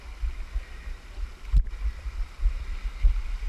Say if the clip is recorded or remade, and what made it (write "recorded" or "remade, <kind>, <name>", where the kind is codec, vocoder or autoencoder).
recorded